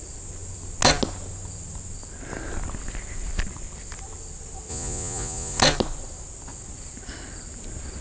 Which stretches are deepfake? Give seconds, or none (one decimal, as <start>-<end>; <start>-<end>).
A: 4.7-5.6